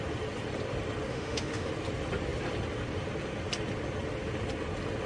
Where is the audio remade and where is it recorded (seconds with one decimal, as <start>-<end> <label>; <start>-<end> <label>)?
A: 0.0-1.1 recorded; 1.1-1.7 remade; 1.7-5.1 recorded